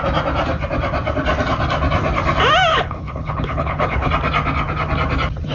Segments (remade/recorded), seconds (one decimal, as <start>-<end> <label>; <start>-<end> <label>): 0.0-2.7 recorded; 2.7-4.1 remade; 4.1-5.5 recorded